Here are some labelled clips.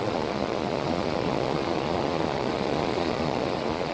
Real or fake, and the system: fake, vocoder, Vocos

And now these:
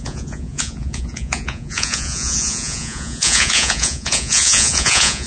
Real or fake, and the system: fake, vocoder, Vocos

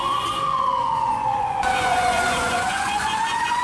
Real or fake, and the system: fake, vocoder, Vocos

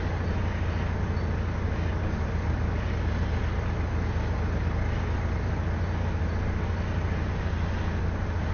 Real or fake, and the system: real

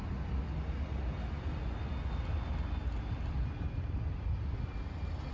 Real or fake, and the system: real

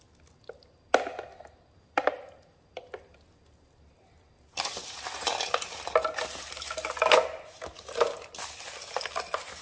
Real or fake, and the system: real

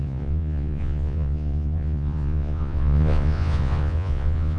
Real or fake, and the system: fake, vocoder, Vocos